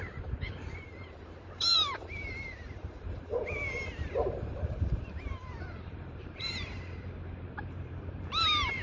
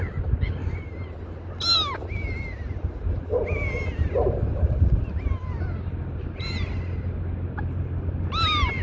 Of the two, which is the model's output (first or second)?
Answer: first